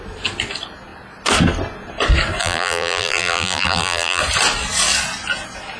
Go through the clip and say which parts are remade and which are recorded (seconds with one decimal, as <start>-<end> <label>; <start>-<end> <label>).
0.0-2.4 recorded; 2.4-4.2 remade; 4.2-5.8 recorded